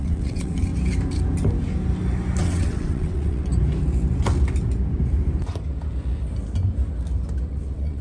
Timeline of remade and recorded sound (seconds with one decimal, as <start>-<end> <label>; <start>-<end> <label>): 0.0-0.7 remade; 0.7-2.4 recorded; 2.4-3.5 remade; 3.5-7.5 recorded; 7.5-8.0 remade